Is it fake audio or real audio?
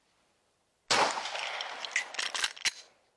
real